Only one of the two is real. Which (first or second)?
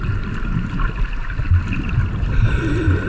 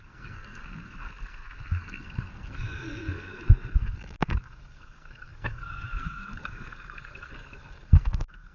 first